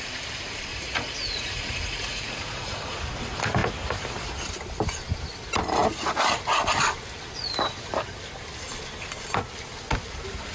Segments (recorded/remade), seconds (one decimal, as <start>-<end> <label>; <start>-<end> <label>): 0.0-0.7 recorded; 0.7-3.0 remade; 3.0-10.5 recorded